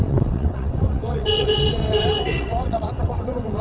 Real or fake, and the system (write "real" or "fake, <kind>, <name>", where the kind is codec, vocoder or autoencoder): fake, vocoder, WaveNeXt